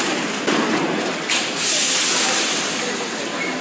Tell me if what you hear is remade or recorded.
recorded